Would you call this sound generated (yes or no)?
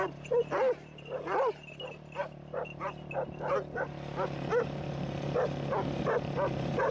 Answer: no